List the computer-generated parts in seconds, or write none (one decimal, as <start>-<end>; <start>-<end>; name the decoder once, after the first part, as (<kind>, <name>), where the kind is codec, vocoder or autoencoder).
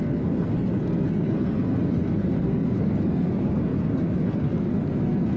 0.0-5.4 (codec, SNAC)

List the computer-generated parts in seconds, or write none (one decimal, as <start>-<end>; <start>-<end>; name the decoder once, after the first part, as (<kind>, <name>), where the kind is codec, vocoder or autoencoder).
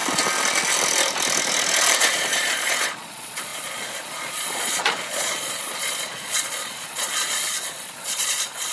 2.0-8.7 (vocoder, Vocos)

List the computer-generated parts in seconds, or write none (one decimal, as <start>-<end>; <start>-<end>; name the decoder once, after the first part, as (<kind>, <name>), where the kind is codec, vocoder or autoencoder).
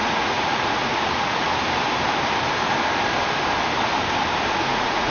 0.0-1.5 (vocoder, Vocos); 4.6-5.1